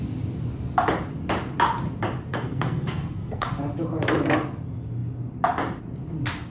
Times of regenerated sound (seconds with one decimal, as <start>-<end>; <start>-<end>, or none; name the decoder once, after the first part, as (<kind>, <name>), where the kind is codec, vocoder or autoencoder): 2.3-3.6 (codec, SNAC)